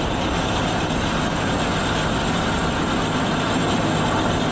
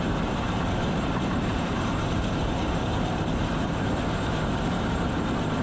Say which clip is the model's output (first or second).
second